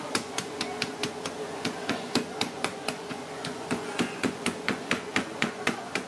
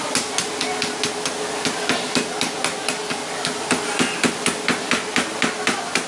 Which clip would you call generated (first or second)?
first